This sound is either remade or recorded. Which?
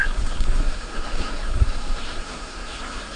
remade